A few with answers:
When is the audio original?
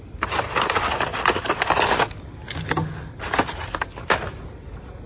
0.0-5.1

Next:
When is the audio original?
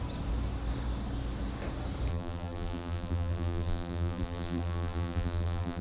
0.0-2.1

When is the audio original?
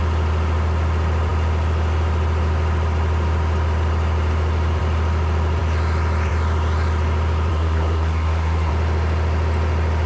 0.0-7.5; 8.7-10.1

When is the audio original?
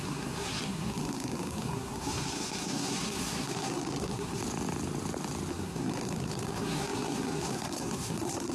4.4-5.5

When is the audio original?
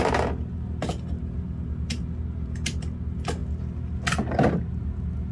0.0-5.3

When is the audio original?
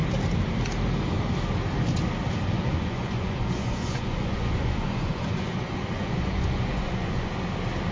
0.0-2.6; 7.3-7.9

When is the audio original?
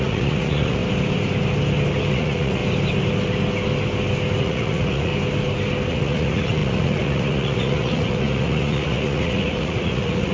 0.8-2.1; 2.6-4.4; 5.1-5.9